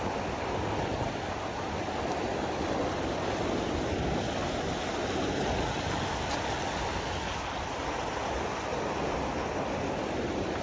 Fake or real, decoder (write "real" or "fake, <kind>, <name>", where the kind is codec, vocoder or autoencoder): real